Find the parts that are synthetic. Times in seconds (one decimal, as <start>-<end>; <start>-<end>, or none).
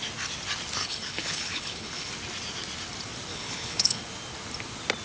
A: 0.8-2.1; 3.3-4.0